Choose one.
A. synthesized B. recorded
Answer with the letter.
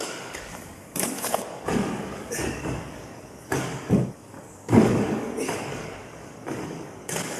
A